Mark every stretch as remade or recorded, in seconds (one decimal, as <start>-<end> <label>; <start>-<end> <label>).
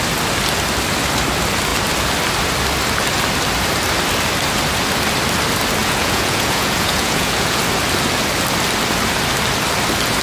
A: 0.0-5.8 recorded; 5.8-7.6 remade; 7.6-10.2 recorded